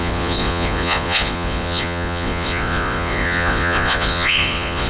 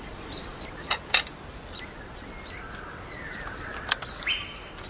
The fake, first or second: first